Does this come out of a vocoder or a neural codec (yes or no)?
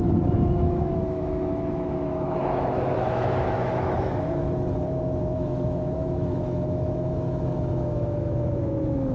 yes